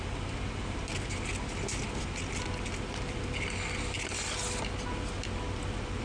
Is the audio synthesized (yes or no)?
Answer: no